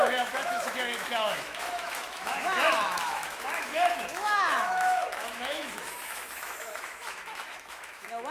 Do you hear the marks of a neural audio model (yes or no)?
yes